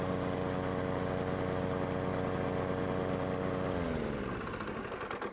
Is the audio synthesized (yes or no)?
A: no